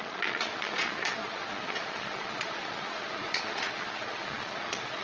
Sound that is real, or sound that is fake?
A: fake